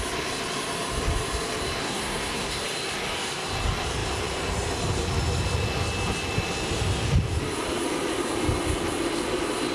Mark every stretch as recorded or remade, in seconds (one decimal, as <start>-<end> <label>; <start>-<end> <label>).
0.0-1.8 recorded; 1.8-2.6 remade; 2.6-9.7 recorded